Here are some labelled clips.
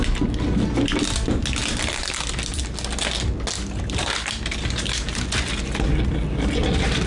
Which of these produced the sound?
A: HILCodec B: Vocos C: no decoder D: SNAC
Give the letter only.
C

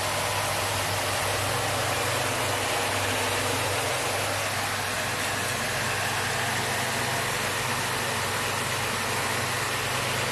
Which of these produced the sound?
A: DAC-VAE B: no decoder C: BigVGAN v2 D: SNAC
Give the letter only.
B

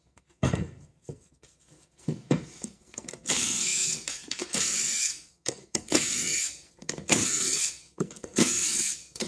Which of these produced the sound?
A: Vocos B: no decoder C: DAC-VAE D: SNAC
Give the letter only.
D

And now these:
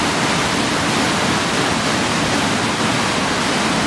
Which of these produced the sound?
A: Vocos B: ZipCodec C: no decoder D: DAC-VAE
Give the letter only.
C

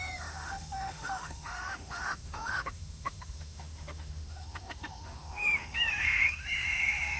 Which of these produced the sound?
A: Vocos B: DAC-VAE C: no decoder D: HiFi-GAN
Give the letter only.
B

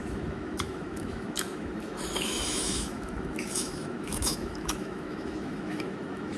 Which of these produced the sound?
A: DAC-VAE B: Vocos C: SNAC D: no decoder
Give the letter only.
A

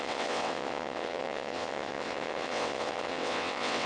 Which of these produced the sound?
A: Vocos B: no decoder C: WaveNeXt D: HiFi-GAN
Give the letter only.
C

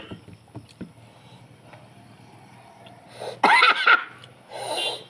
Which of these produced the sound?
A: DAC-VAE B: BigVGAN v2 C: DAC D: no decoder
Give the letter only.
D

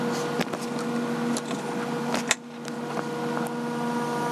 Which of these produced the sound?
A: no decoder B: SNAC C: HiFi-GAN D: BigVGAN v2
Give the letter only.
A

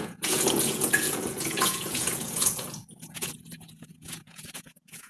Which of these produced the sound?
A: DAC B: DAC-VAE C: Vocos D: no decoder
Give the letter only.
C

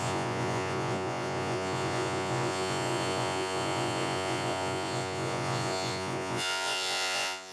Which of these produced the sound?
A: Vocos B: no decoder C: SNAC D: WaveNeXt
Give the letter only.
A